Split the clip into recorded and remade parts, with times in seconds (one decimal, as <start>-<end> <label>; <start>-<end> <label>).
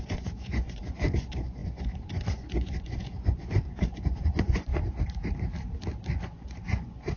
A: 0.0-4.7 remade; 4.7-6.2 recorded; 6.2-7.2 remade